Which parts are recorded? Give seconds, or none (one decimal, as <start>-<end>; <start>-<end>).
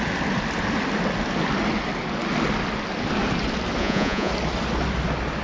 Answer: 0.0-3.8; 4.3-5.4